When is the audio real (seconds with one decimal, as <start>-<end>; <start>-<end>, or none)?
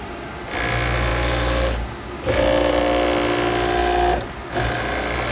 0.0-5.3